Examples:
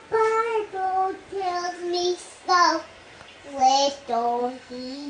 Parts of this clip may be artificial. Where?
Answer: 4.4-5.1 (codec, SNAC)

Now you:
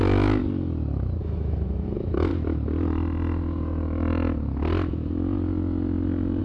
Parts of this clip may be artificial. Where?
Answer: 0.0-0.4 (autoencoder, DAC-VAE); 1.2-2.3

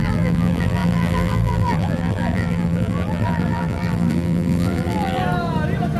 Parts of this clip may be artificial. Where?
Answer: 0.0-5.2 (vocoder, BigVGAN v2)